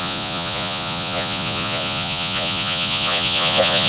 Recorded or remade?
remade